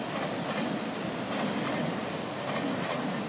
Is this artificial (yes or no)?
no